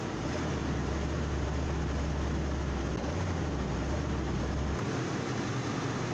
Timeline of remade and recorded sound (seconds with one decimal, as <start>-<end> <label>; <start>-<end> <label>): 0.0-6.1 recorded